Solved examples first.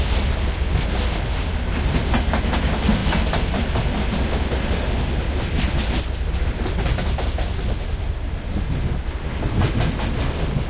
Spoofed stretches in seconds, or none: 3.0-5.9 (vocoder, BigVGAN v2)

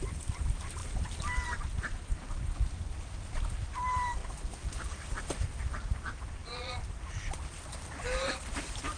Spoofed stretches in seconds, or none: 0.0-9.0 (vocoder, BigVGAN v2)

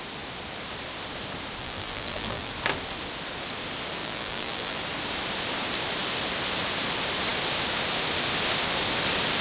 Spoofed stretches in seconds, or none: 1.6-2.5 (vocoder, BigVGAN v2); 4.0-4.8

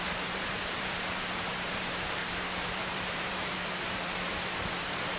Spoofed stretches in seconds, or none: 0.0-2.2 (vocoder, BigVGAN v2); 2.7-5.2

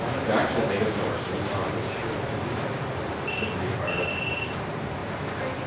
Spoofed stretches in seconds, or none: 0.0-2.0 (vocoder, BigVGAN v2); 4.2-5.0

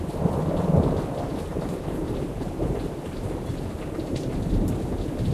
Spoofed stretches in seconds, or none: 1.5-4.7 (vocoder, BigVGAN v2)

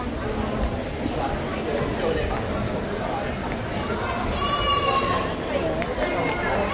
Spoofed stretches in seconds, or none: none

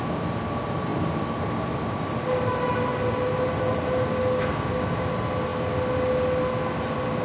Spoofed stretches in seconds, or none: none